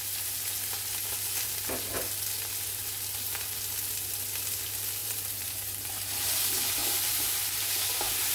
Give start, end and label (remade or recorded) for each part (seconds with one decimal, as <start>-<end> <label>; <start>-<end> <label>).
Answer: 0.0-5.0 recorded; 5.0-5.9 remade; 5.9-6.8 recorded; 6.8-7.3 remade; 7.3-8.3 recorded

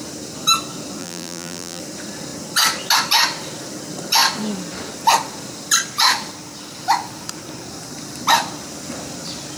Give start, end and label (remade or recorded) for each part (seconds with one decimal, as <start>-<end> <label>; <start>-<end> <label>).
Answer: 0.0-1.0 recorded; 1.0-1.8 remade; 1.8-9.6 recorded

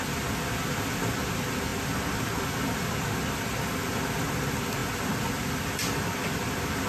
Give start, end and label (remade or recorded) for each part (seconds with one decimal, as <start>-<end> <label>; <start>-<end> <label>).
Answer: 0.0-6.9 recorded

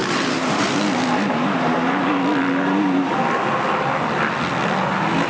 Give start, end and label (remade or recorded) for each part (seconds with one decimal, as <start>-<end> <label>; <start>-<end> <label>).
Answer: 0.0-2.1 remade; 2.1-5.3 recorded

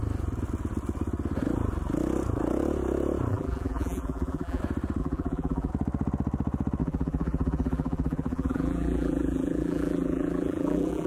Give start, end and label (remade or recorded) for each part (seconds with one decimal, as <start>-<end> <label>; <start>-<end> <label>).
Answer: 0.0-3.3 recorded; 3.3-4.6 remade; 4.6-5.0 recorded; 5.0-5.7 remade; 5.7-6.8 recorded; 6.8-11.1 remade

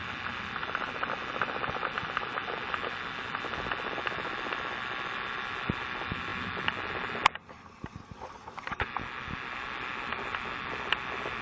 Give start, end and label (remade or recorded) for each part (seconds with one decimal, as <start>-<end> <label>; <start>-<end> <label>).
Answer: 0.0-11.4 recorded

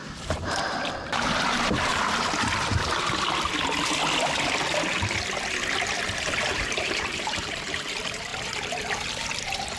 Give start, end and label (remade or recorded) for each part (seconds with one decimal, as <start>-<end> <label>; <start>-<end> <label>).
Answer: 0.0-1.9 remade; 1.9-6.5 recorded; 6.5-8.3 remade; 8.3-9.4 recorded; 9.4-9.8 remade